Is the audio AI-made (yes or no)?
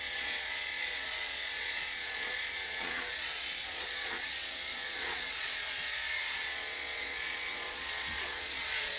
yes